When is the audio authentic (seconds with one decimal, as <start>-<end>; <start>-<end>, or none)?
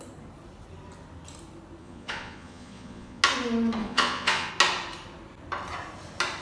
0.0-1.8; 3.2-3.8; 4.5-6.4